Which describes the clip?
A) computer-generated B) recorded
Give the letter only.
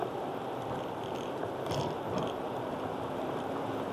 A